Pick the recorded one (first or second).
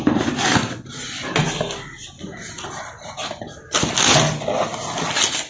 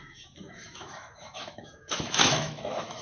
first